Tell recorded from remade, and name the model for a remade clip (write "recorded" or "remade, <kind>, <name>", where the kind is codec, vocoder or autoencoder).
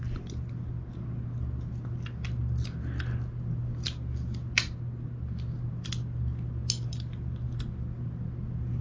recorded